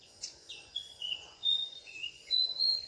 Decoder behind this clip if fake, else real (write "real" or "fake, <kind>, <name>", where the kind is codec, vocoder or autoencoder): fake, vocoder, Vocos